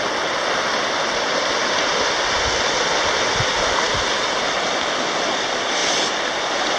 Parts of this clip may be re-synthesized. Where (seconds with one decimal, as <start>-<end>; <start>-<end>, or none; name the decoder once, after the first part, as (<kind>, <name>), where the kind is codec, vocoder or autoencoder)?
none